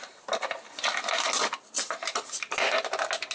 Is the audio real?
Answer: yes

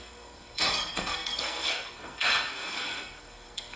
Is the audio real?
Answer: no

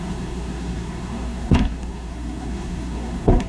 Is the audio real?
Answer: no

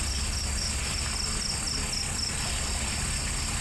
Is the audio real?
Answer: yes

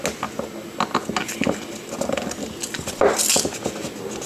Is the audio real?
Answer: yes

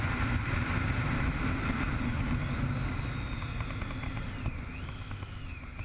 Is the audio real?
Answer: yes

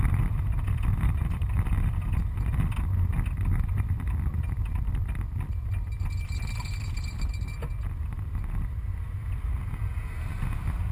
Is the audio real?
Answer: yes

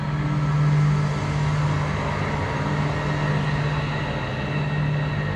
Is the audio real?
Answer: yes